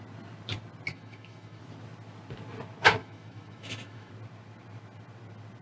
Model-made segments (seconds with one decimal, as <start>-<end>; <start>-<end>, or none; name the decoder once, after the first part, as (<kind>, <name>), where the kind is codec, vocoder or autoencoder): 0.9-1.6 (autoencoder, DAC-VAE); 3.0-4.1